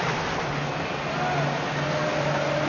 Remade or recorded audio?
recorded